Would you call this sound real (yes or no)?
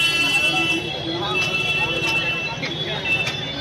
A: yes